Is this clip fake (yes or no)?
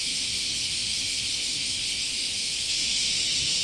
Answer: yes